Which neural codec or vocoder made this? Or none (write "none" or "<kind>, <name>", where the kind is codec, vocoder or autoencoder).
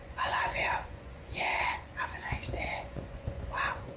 vocoder, Vocos